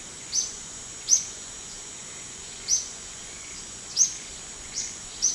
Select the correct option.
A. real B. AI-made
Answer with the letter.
B